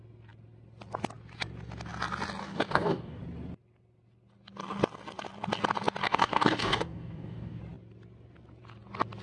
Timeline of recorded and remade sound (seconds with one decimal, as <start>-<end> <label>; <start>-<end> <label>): 0.0-2.4 recorded; 2.4-3.2 remade; 3.2-6.0 recorded; 6.0-7.6 remade; 7.6-9.2 recorded